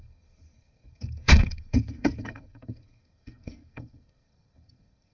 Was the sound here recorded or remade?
remade